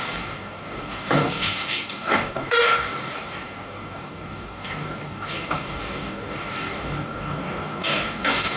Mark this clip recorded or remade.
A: remade